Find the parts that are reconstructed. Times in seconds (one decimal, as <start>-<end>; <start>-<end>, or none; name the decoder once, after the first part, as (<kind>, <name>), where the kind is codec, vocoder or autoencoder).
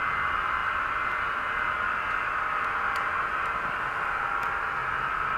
none